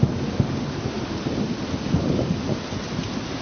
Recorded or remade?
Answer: recorded